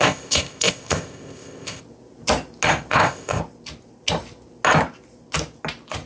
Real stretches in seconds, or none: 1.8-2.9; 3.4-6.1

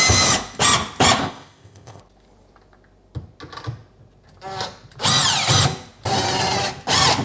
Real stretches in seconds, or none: 0.0-1.2; 2.0-7.2

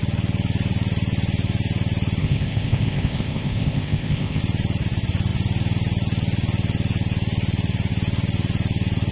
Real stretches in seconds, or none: 0.0-2.2; 4.4-9.1

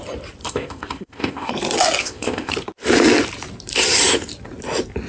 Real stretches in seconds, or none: 0.0-0.4; 1.5-2.0; 2.5-5.1

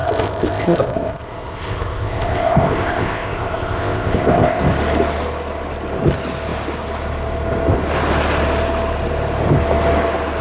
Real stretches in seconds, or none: 4.6-10.4

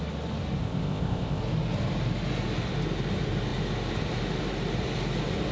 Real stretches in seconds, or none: 0.0-0.6; 1.4-5.5